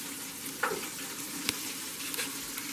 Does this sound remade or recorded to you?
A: recorded